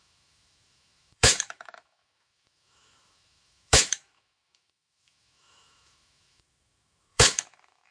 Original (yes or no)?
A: no